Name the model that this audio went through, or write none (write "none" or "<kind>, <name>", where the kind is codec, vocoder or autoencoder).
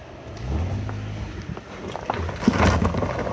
none